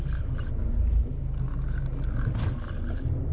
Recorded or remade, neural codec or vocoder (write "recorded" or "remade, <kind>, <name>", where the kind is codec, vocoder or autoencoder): recorded